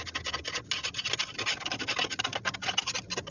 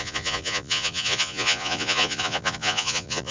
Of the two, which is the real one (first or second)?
first